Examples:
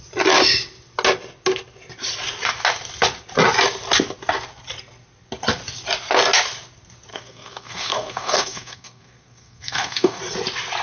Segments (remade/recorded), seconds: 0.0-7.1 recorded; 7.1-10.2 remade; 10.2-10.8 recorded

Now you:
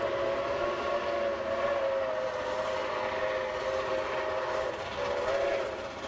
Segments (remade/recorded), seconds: 0.0-6.1 recorded

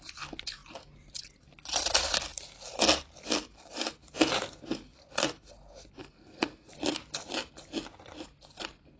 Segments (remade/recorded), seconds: 0.0-6.0 recorded; 6.0-6.7 remade; 6.7-9.0 recorded

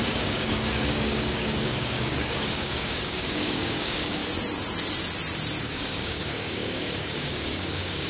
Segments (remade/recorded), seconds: 0.0-4.2 remade; 4.2-5.6 recorded; 5.6-8.1 remade

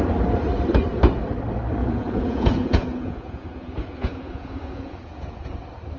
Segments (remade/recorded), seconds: 0.0-1.8 recorded; 1.8-5.4 remade; 5.4-6.0 recorded

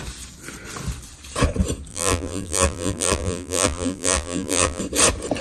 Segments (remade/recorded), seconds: 0.0-1.9 recorded; 1.9-4.8 remade; 4.8-5.4 recorded

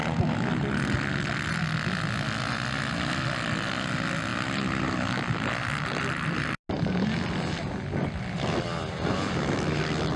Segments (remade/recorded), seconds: 0.0-10.2 recorded